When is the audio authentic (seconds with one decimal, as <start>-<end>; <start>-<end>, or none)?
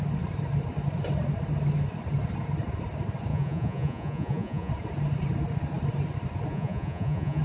0.0-3.3; 4.7-6.5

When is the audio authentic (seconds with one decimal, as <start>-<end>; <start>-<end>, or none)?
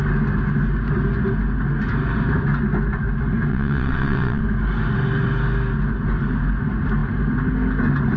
0.0-3.5; 4.4-8.2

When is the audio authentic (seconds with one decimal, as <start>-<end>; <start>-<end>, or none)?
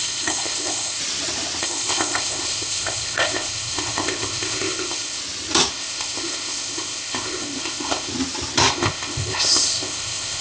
1.0-1.6; 5.2-5.7; 8.1-8.7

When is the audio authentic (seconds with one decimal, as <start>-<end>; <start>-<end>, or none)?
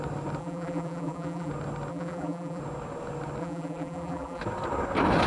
0.0-0.4; 1.5-1.9; 2.6-3.4; 4.4-5.3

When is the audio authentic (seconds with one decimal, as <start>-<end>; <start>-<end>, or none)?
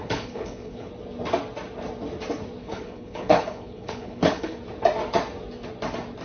0.9-2.6; 4.6-6.2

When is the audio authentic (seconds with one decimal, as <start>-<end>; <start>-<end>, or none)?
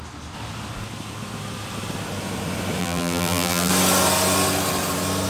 0.0-2.8; 3.7-5.3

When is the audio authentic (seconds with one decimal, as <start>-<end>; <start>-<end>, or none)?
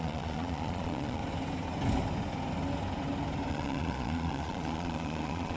1.2-3.5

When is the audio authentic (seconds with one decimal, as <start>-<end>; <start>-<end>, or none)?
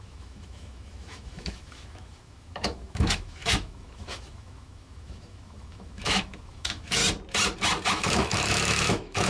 7.0-7.9